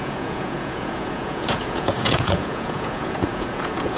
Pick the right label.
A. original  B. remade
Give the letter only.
B